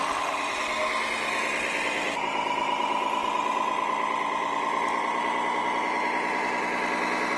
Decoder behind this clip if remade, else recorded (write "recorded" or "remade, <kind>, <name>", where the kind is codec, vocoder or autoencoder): recorded